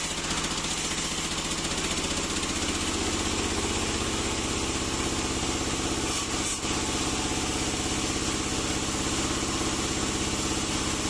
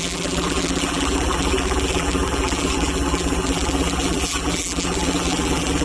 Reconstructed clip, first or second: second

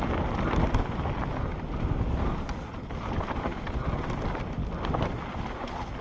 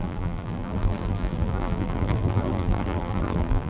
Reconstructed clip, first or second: second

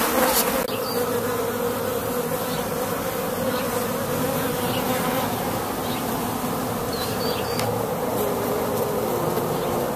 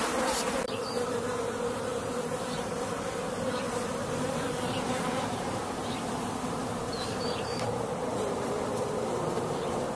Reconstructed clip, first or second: second